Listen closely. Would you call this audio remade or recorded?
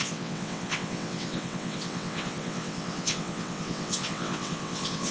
remade